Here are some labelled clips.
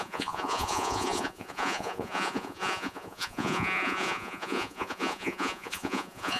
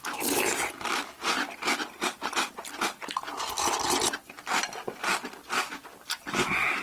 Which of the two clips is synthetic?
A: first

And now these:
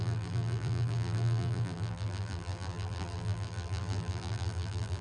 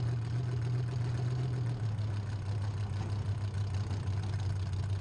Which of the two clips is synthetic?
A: first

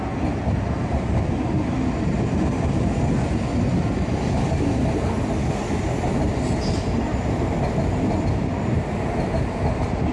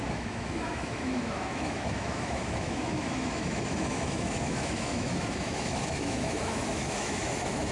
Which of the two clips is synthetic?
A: second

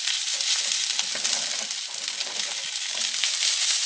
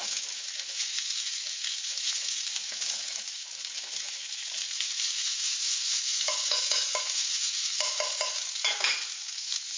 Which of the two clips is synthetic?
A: second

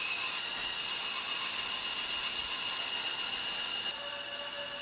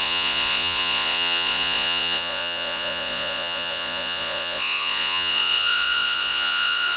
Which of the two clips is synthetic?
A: second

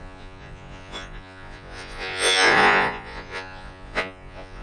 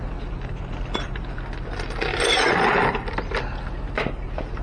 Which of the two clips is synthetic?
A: first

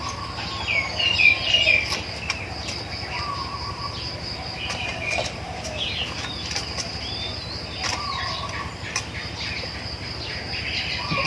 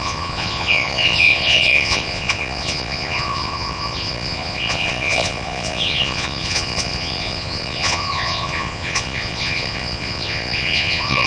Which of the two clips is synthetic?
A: second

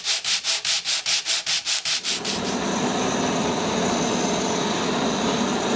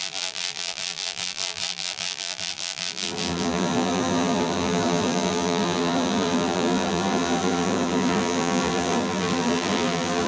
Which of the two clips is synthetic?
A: second